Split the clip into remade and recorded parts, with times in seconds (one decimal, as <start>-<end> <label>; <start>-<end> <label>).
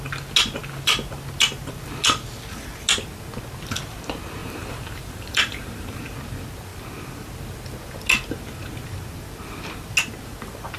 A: 0.0-4.4 recorded; 4.4-6.0 remade; 6.0-10.8 recorded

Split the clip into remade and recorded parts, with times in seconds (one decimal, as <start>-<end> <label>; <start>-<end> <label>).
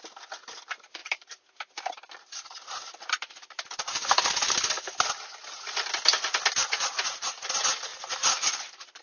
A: 0.0-1.0 recorded; 1.0-4.5 remade; 4.5-6.6 recorded; 6.6-7.3 remade; 7.3-7.9 recorded; 7.9-9.0 remade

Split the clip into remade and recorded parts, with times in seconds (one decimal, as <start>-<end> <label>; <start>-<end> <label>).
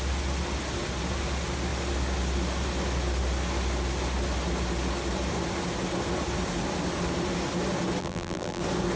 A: 0.0-8.0 recorded; 8.0-8.6 remade; 8.6-9.0 recorded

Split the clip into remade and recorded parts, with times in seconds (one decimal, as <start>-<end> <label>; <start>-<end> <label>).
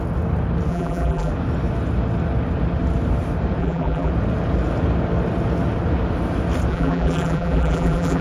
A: 0.0-0.7 recorded; 0.7-1.3 remade; 1.3-3.6 recorded; 3.6-4.1 remade; 4.1-6.7 recorded; 6.7-8.2 remade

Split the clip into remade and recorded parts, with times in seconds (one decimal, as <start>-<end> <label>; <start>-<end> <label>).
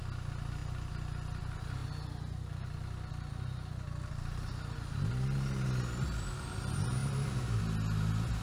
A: 0.0-7.0 recorded; 7.0-7.6 remade; 7.6-8.4 recorded